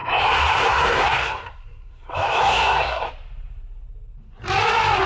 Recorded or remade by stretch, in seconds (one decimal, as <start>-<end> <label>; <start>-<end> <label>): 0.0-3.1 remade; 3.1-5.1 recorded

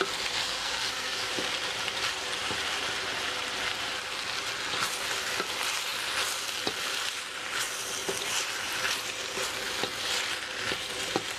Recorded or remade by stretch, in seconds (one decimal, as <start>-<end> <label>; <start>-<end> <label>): 0.0-0.4 recorded; 0.4-1.3 remade; 1.3-11.4 recorded

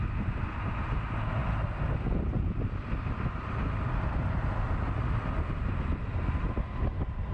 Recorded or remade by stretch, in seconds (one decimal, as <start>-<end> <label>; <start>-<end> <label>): 0.0-7.3 recorded